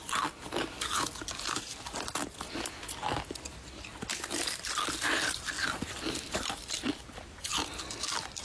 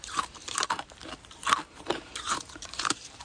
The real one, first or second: first